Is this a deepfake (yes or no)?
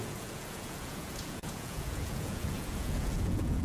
yes